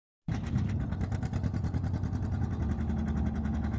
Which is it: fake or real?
real